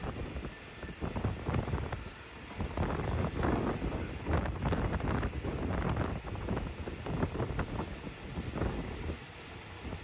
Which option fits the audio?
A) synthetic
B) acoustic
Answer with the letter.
B